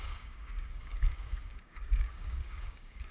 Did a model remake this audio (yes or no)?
yes